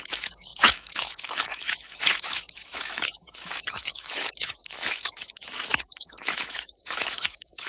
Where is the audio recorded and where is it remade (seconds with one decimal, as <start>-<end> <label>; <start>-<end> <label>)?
0.0-7.7 remade